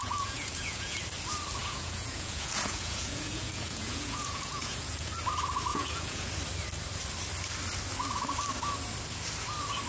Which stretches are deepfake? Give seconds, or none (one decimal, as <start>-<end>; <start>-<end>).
0.0-1.0; 1.6-5.1; 5.7-6.3